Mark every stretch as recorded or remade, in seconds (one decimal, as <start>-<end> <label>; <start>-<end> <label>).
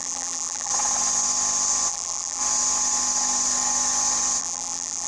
0.0-0.7 remade; 0.7-1.9 recorded; 1.9-2.4 remade; 2.4-4.4 recorded; 4.4-5.1 remade